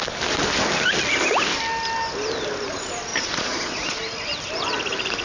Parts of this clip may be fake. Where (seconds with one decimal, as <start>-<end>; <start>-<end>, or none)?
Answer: 3.1-4.0